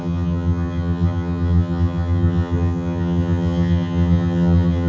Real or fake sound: fake